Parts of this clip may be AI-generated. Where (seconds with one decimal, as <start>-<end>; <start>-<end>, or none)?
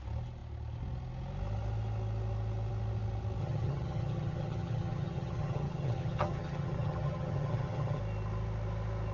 3.4-8.0